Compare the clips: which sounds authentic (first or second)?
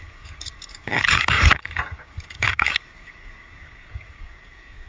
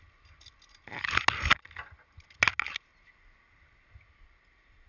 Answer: second